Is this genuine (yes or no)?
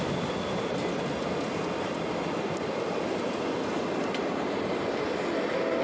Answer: yes